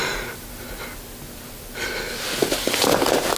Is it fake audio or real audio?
real